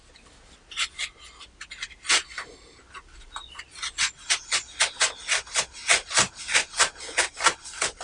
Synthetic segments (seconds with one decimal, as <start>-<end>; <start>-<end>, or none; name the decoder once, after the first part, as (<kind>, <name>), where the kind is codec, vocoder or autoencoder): none